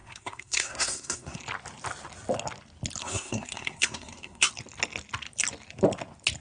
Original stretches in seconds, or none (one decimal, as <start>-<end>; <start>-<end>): 1.4-3.0; 4.5-6.4